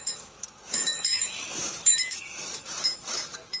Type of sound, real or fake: fake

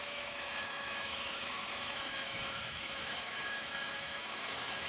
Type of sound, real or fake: fake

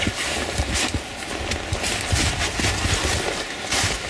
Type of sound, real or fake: real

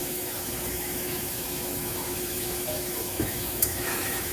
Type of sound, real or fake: fake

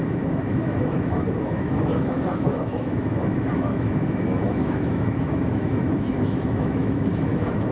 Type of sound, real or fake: fake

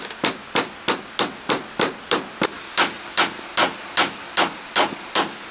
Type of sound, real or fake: real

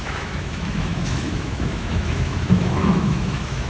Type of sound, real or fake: fake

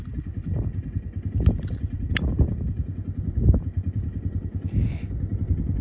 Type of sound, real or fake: real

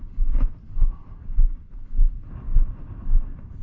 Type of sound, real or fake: real